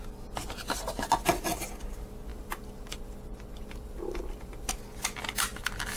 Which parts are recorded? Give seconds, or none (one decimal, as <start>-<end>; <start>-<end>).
0.0-2.3; 4.7-6.0